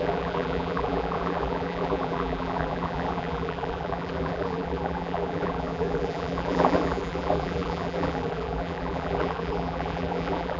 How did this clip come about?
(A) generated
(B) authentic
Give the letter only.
A